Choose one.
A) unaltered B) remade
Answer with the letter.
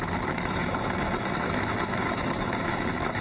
B